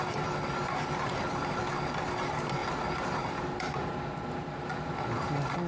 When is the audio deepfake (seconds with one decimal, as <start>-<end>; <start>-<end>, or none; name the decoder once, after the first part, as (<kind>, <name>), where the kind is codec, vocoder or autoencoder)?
none